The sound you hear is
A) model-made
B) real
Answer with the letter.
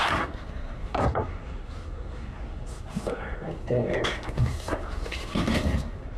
A